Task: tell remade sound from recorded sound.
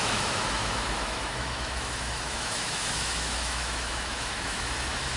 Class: remade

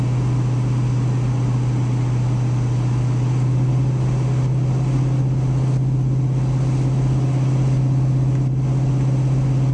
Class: recorded